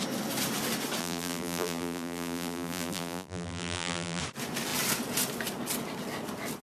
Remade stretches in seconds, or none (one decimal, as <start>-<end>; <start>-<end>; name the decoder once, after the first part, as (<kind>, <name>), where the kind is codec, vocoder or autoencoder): 1.0-4.2 (vocoder, BigVGAN v2)